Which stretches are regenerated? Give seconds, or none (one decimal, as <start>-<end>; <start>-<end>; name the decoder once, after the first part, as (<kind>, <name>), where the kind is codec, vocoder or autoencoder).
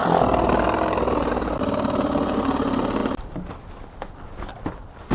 none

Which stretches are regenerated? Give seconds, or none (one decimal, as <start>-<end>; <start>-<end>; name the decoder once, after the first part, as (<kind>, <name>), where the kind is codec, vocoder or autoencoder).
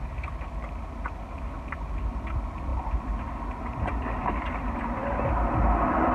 none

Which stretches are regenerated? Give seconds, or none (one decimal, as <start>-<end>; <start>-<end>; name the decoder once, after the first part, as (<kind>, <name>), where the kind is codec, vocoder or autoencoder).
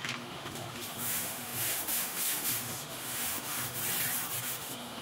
0.0-3.8 (autoencoder, DAC-VAE); 4.4-5.0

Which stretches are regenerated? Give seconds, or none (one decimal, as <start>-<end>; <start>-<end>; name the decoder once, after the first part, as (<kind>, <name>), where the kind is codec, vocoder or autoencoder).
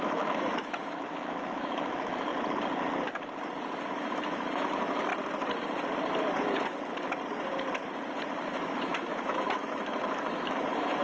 0.0-2.3 (autoencoder, DAC-VAE); 3.9-5.1; 8.5-11.0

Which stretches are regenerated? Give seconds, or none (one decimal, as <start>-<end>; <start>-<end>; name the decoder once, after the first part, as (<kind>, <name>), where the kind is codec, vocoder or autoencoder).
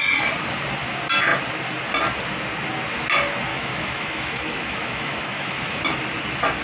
3.5-5.8 (autoencoder, DAC-VAE)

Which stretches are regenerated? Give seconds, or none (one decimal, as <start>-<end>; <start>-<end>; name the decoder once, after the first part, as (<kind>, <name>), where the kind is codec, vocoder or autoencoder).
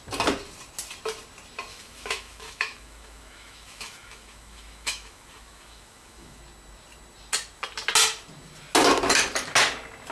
1.7-6.4 (autoencoder, DAC-VAE)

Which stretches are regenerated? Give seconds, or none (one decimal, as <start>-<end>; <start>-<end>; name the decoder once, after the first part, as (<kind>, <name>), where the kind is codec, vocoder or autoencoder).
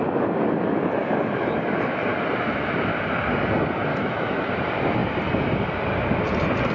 3.9-4.5 (autoencoder, DAC-VAE)